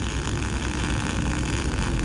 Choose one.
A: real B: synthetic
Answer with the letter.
A